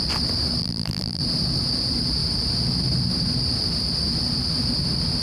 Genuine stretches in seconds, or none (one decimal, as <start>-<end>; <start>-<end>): 0.0-0.6; 1.2-5.2